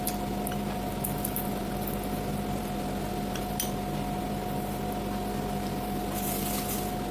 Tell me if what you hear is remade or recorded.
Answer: recorded